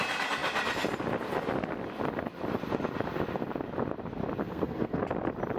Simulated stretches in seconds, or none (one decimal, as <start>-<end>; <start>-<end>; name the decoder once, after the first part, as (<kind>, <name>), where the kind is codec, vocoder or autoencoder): 4.4-5.0 (codec, SNAC)